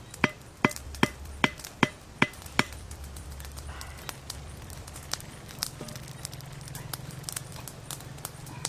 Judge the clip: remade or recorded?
remade